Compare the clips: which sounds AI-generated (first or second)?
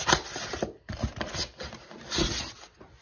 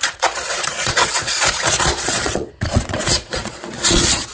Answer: second